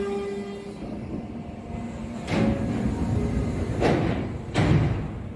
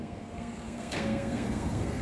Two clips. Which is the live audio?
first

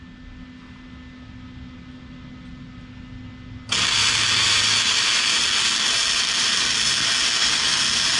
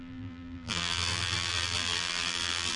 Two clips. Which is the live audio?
first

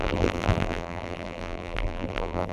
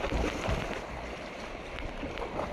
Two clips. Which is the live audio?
second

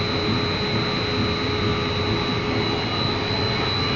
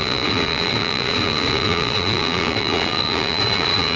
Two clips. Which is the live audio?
first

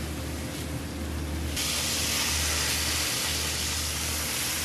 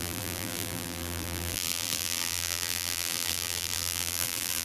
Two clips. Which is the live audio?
first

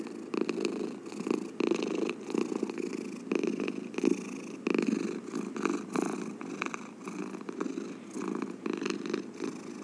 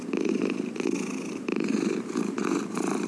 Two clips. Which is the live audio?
first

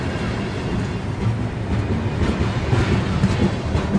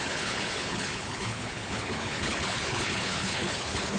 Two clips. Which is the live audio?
first